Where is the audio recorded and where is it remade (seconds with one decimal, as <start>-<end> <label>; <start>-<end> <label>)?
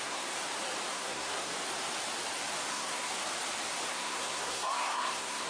0.0-0.4 remade; 0.4-0.9 recorded; 0.9-1.5 remade; 1.5-2.7 recorded; 2.7-3.1 remade; 3.1-3.9 recorded; 3.9-5.5 remade